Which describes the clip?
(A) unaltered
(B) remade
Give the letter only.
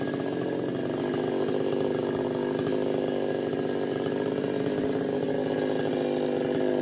A